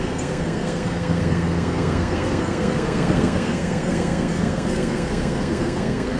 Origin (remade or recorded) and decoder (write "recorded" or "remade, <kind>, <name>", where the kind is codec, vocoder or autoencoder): remade, codec, SNAC